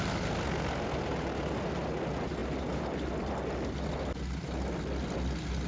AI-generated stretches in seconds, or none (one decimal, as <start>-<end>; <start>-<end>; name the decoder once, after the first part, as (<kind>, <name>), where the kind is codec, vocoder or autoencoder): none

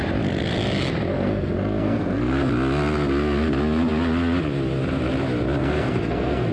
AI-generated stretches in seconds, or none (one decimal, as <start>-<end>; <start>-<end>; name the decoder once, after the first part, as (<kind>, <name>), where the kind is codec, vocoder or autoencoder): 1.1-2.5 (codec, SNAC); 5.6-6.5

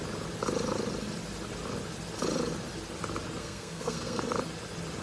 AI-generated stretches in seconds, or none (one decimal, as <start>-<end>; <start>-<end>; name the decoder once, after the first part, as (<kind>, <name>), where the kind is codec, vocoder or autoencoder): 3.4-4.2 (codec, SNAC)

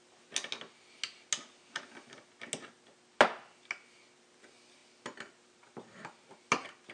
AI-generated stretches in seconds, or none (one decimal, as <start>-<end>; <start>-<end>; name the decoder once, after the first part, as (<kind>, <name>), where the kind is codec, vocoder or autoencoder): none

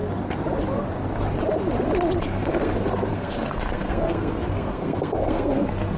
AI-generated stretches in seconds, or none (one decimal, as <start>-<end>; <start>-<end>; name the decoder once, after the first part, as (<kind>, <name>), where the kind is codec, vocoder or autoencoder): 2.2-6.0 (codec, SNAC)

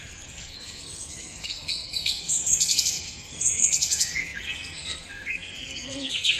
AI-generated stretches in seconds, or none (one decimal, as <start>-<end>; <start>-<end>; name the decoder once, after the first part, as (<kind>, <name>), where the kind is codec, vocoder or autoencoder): 0.0-6.4 (codec, SNAC)

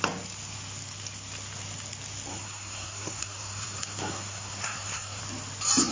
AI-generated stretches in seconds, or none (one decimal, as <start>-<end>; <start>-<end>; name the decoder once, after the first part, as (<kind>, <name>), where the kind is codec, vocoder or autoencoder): 2.3-5.2 (codec, SNAC)